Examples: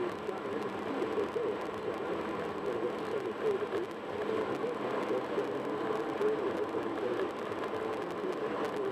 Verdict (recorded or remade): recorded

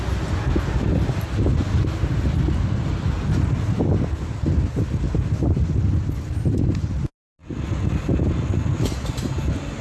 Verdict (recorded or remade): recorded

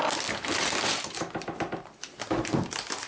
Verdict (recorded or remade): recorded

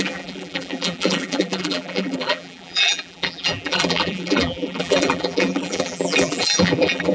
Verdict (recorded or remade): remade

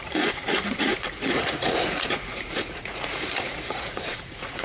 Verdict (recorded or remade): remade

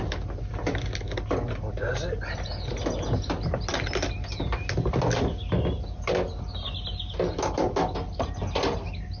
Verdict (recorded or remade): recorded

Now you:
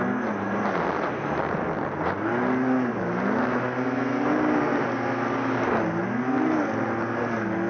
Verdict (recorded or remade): recorded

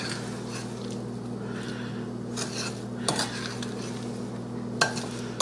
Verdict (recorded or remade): recorded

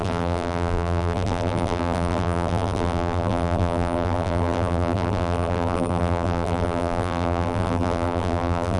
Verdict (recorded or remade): remade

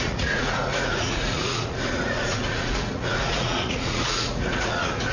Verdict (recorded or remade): remade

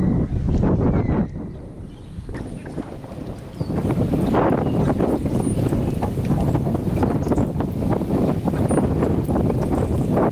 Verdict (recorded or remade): recorded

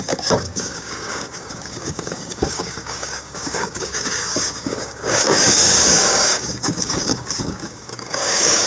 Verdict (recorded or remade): remade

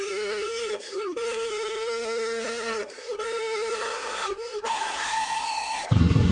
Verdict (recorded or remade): remade